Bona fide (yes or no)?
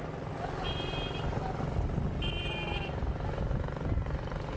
yes